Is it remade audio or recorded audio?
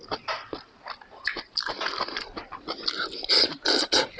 recorded